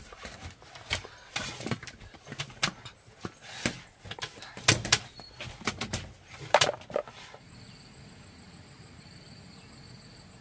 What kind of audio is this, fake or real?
real